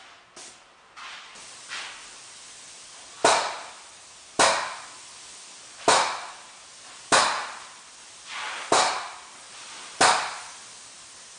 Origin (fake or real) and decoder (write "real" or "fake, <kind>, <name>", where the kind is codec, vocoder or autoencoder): real